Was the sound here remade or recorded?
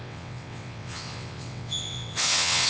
remade